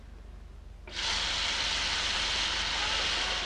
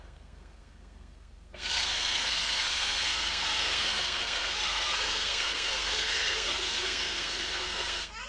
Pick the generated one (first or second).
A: second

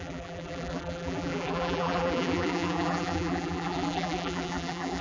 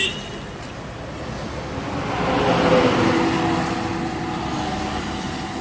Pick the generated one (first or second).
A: first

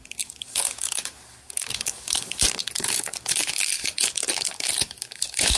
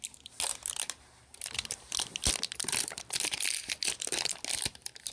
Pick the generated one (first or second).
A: first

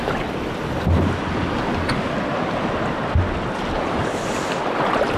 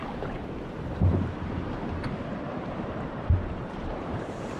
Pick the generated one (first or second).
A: second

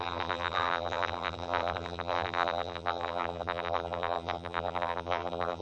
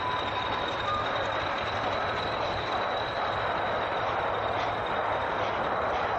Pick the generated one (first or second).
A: first